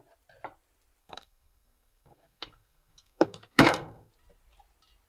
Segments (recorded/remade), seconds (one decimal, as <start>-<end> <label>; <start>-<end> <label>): 0.0-1.0 recorded; 1.0-4.1 remade; 4.1-5.1 recorded